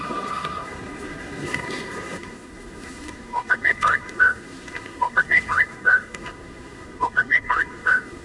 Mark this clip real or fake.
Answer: fake